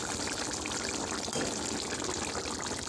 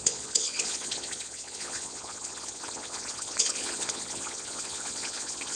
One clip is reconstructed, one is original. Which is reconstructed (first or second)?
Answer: second